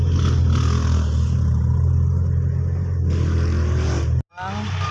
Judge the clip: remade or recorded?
recorded